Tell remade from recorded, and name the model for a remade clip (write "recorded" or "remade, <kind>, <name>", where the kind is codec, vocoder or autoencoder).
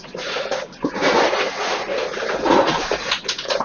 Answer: remade, vocoder, Vocos